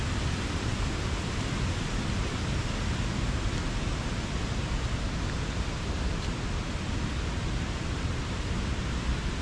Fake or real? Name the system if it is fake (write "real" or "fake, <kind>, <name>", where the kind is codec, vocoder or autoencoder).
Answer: real